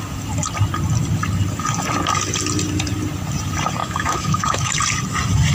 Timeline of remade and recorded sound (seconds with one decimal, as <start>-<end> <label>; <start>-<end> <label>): 0.0-3.8 recorded; 3.8-4.8 remade; 4.8-5.5 recorded